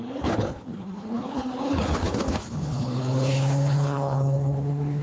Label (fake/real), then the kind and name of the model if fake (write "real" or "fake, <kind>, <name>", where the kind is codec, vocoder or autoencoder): fake, codec, HILCodec